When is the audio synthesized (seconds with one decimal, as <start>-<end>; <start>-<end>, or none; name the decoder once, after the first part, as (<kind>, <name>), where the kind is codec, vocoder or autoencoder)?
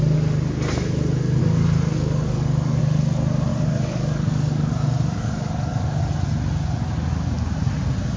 1.4-2.8 (codec, DAC); 3.5-6.0